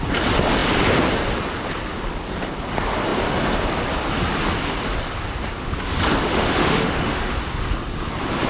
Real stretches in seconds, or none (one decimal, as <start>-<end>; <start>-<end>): 0.0-6.3; 7.4-8.5